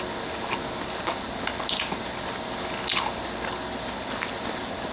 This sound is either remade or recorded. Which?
recorded